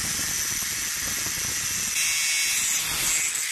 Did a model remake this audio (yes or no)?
no